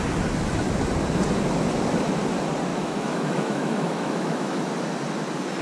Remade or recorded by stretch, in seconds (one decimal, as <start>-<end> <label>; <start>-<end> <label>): 0.0-2.7 recorded; 2.7-4.6 remade; 4.6-5.6 recorded